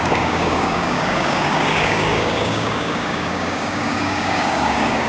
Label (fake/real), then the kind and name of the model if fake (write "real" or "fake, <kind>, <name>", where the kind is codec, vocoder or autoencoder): fake, codec, DAC